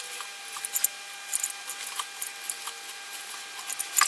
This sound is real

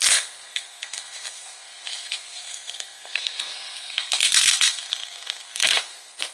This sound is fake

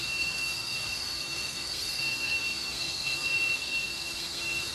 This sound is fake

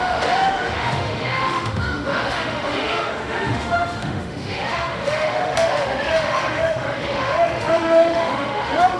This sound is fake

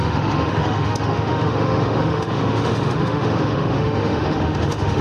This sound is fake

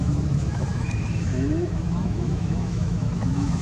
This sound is fake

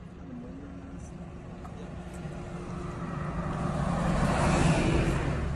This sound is real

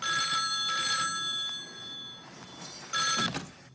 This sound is real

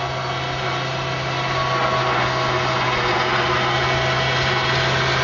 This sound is real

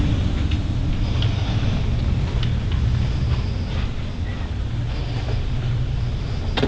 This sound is real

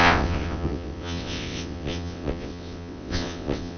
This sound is fake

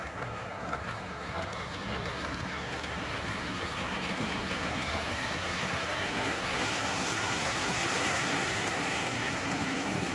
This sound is fake